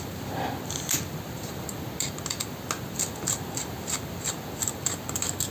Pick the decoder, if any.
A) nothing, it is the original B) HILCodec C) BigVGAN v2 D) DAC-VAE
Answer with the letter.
A